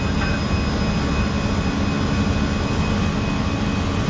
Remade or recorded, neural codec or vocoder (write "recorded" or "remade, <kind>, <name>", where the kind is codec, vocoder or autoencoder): recorded